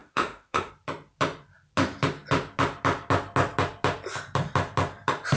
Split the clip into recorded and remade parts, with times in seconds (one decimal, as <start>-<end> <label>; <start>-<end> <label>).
0.0-0.7 remade; 0.7-5.4 recorded